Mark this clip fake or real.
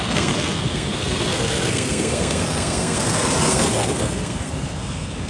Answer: fake